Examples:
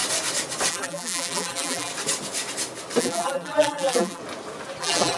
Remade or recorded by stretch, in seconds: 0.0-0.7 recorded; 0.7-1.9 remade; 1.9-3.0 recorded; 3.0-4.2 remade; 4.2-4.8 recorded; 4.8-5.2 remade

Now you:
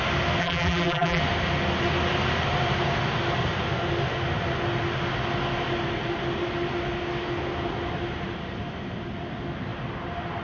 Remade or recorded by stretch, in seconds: 0.0-0.4 recorded; 0.4-1.2 remade; 1.2-10.4 recorded

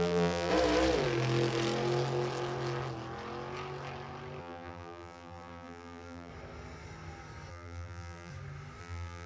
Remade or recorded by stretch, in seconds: 0.0-0.5 remade; 0.5-4.4 recorded; 4.4-6.3 remade; 6.3-7.5 recorded; 7.5-8.3 remade; 8.3-8.8 recorded; 8.8-9.3 remade

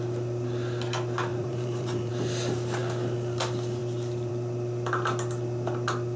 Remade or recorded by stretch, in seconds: 0.0-1.3 recorded; 1.3-2.1 remade; 2.1-6.2 recorded

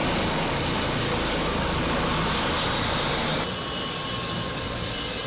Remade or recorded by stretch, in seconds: 0.0-5.3 recorded

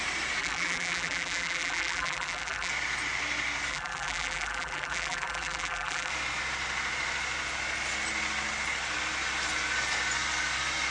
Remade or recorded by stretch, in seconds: 0.0-0.4 recorded; 0.4-2.7 remade; 2.7-3.7 recorded; 3.7-6.1 remade; 6.1-10.9 recorded

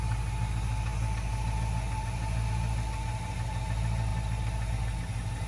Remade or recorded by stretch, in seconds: 0.0-5.5 recorded